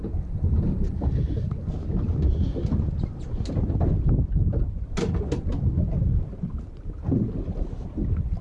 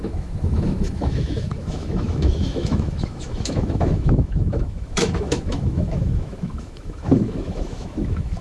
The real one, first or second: first